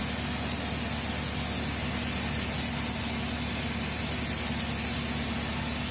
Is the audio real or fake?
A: real